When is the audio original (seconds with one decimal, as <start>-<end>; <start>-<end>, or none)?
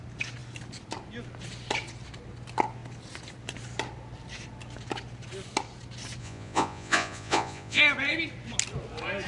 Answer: 0.0-6.2; 7.8-9.3